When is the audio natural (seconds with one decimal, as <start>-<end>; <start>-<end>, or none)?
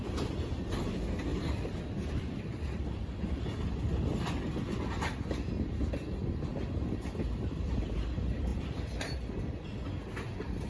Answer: 0.0-1.3; 3.4-8.5; 9.3-10.7